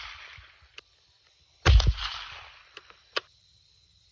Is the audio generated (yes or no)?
yes